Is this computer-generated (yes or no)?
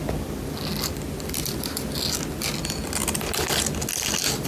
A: no